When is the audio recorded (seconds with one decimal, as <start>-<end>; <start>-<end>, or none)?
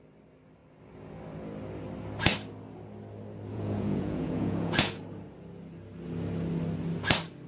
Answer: 0.0-3.5; 5.0-7.5